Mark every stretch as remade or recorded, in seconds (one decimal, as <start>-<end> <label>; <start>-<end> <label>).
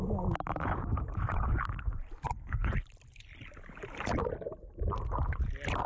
0.0-5.9 recorded